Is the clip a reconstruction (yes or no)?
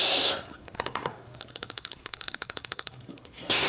yes